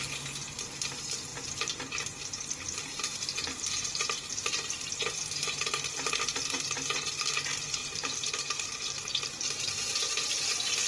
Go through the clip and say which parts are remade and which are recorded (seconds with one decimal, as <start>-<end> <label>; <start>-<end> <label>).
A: 0.0-1.3 recorded; 1.3-1.8 remade; 1.8-2.2 recorded; 2.2-4.5 remade; 4.5-7.8 recorded; 7.8-10.4 remade; 10.4-10.9 recorded